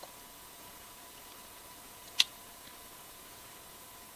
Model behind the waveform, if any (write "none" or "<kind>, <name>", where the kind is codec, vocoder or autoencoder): vocoder, Vocos